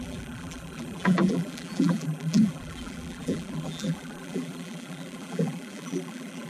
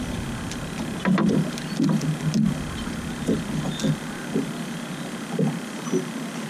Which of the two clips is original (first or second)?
second